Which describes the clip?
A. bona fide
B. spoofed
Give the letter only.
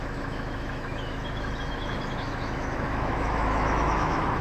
B